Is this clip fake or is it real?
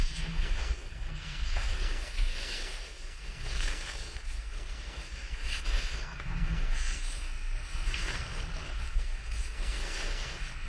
fake